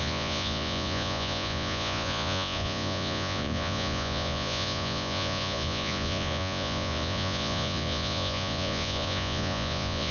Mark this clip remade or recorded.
remade